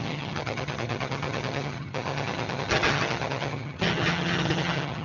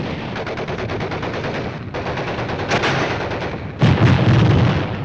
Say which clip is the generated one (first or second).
first